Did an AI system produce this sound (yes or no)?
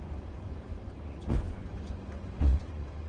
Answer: yes